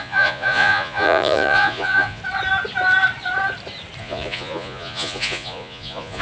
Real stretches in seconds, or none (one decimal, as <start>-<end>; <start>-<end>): 2.2-4.0